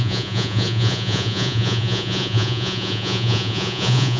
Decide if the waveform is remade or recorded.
remade